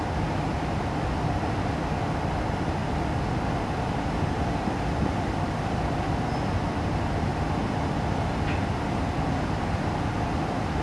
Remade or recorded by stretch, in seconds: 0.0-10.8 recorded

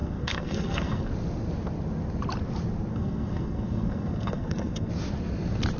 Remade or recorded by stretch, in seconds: 0.0-1.1 remade; 1.1-2.9 recorded; 2.9-4.9 remade; 4.9-5.8 recorded

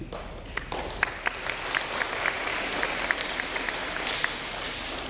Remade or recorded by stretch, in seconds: 0.0-2.5 recorded; 2.5-4.4 remade; 4.4-5.1 recorded

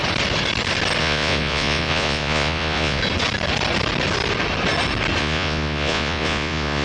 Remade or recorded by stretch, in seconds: 0.0-1.0 recorded; 1.0-3.0 remade; 3.0-5.2 recorded; 5.2-6.8 remade

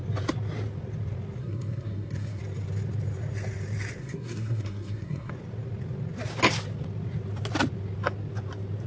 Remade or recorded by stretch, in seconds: 0.0-1.4 recorded; 1.4-2.4 remade; 2.4-4.0 recorded; 4.0-5.3 remade; 5.3-8.9 recorded

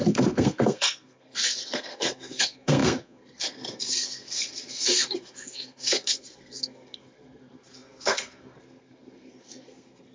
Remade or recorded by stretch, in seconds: 0.0-10.1 remade

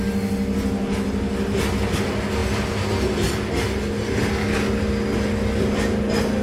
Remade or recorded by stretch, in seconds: 0.0-6.4 recorded

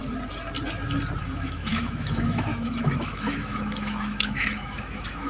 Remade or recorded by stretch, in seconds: 0.0-1.2 recorded; 1.2-5.3 remade